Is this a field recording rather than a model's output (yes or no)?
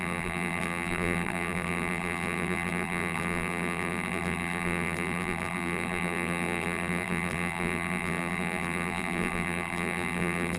no